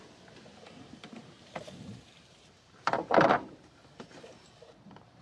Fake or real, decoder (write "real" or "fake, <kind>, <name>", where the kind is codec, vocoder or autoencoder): fake, vocoder, BigVGAN v2